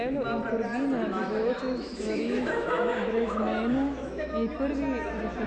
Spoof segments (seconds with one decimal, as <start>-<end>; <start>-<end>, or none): 1.0-4.3

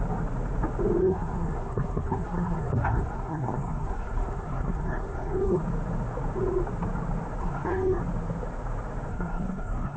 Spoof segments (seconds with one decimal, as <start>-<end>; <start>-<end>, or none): 1.0-5.6; 7.4-8.0; 9.1-10.0

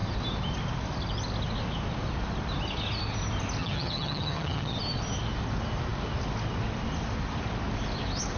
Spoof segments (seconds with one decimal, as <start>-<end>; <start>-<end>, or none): 3.6-4.8

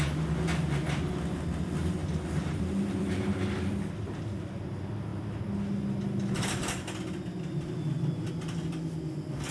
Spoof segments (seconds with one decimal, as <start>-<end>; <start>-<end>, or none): none

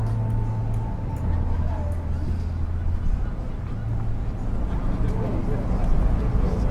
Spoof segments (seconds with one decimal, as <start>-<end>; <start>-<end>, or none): none

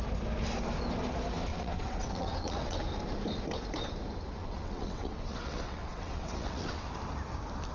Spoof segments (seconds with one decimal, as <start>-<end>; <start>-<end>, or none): 1.5-2.8; 4.4-6.9

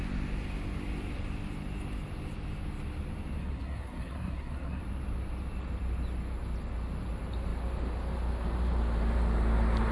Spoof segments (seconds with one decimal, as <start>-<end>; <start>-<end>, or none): 3.4-4.8

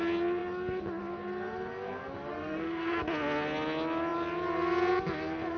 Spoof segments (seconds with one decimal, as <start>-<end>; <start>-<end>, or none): 2.3-3.0